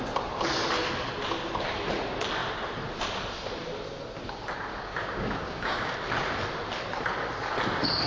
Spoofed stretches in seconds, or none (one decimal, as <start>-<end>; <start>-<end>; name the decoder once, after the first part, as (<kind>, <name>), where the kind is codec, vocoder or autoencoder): 4.7-5.9 (codec, DAC)